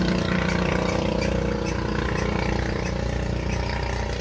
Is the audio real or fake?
real